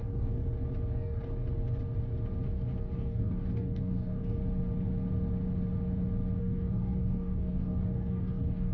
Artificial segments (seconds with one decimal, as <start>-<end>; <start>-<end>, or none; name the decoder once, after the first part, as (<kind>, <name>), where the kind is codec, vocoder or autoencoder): 0.0-0.4 (codec, DAC); 0.9-1.3; 2.8-4.4; 6.4-8.7